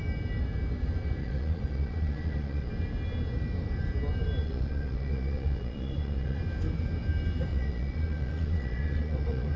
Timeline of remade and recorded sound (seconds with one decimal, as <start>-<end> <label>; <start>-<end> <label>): 0.0-1.2 recorded; 1.2-2.7 remade; 2.7-4.4 recorded; 4.4-6.4 remade; 6.4-7.5 recorded; 7.5-9.6 remade